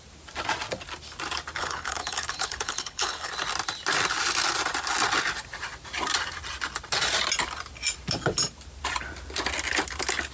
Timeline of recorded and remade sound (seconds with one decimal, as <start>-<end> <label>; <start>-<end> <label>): 0.0-1.6 recorded; 1.6-3.3 remade; 3.3-10.3 recorded